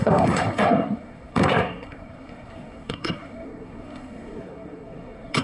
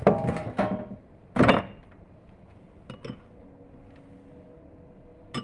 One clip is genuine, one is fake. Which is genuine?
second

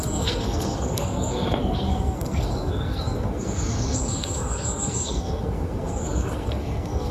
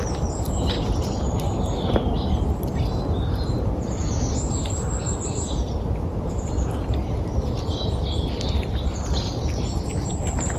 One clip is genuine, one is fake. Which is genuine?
second